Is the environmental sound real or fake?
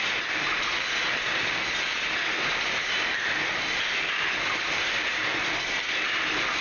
real